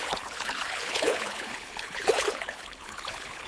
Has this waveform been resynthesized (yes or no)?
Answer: yes